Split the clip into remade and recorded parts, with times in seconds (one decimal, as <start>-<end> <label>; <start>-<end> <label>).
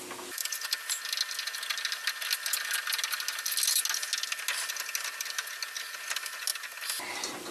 0.0-0.4 recorded; 0.4-1.0 remade; 1.0-6.5 recorded; 6.5-7.1 remade; 7.1-7.5 recorded